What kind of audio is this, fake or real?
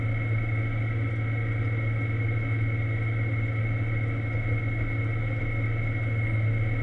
real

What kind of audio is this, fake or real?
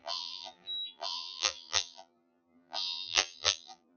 fake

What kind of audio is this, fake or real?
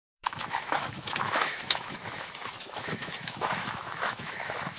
fake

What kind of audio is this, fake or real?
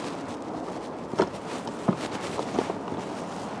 real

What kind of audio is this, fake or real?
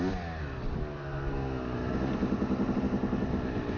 real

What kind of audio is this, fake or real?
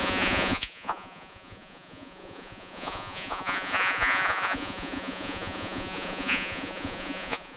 fake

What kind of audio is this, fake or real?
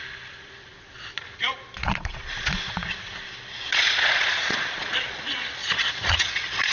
fake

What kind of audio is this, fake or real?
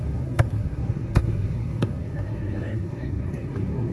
fake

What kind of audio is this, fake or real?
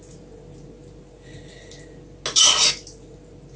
real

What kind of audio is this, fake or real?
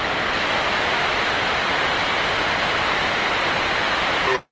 real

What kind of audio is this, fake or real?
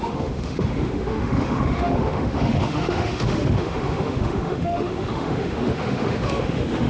fake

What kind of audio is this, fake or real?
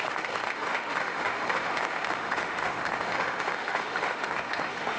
fake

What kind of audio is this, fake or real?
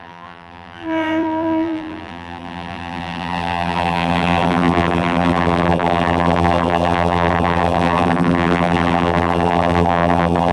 fake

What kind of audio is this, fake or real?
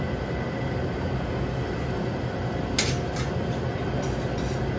real